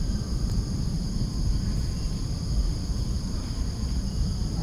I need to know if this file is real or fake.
fake